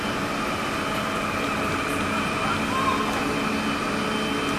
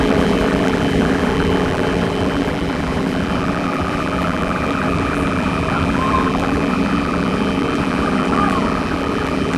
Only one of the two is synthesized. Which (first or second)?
second